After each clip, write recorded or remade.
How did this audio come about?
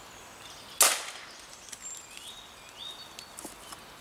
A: recorded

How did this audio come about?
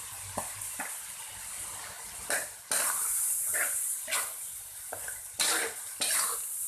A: recorded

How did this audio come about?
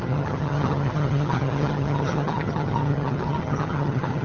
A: remade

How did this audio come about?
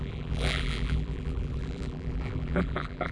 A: remade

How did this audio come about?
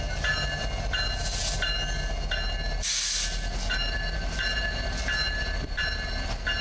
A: recorded